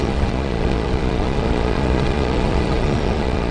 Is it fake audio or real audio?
fake